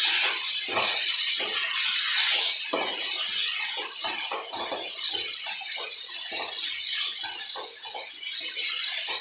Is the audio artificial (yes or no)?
yes